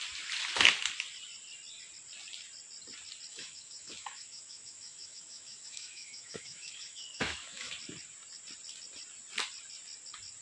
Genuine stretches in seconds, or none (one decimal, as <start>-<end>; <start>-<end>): 0.0-3.3; 7.7-10.4